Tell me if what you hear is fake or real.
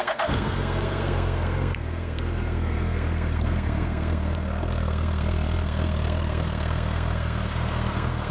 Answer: fake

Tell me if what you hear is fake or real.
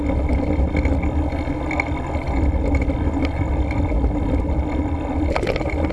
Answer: real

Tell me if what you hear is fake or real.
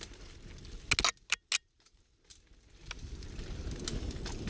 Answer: real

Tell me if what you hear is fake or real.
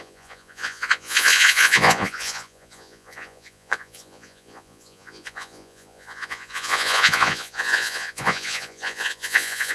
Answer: fake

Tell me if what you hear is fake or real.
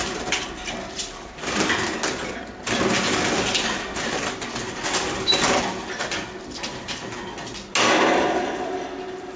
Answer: real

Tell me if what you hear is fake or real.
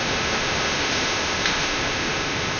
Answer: fake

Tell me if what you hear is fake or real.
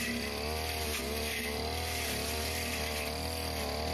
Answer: real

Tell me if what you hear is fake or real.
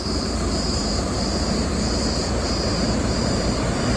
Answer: fake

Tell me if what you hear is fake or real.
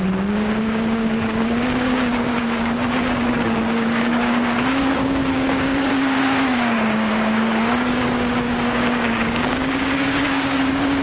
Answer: fake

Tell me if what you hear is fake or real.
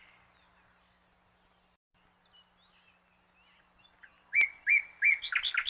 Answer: real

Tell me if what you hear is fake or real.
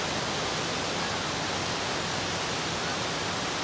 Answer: real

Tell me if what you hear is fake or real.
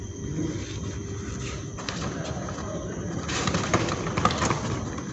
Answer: real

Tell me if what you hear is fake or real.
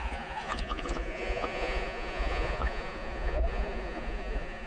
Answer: fake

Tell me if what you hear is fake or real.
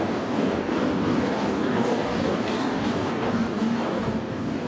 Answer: fake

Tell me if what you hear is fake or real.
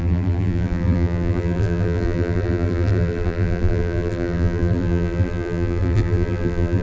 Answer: fake